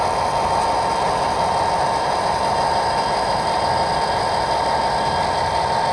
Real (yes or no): yes